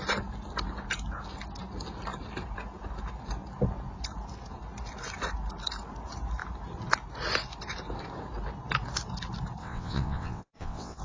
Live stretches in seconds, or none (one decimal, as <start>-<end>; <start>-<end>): 0.0-9.6